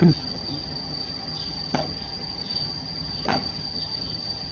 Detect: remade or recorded remade